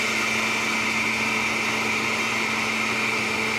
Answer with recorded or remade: recorded